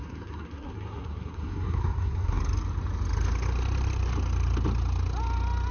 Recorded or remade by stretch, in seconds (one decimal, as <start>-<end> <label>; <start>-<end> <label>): 0.0-2.4 remade; 2.4-5.7 recorded